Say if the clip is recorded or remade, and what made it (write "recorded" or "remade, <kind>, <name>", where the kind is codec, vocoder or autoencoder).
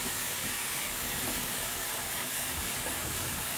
remade, codec, DAC